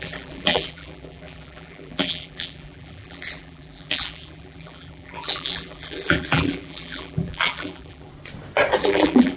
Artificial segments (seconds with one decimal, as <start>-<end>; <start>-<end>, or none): 0.0-8.1; 8.8-9.4